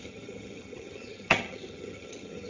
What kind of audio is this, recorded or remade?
remade